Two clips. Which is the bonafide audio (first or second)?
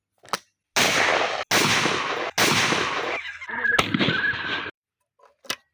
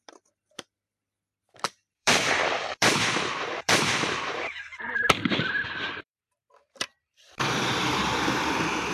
first